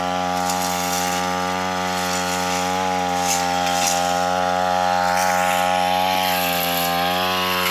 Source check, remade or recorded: recorded